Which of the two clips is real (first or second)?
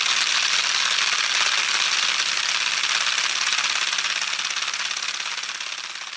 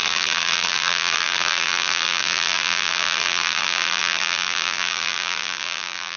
first